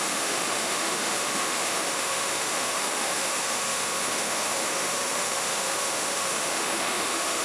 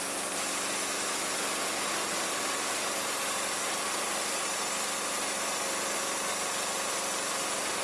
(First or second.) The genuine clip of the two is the second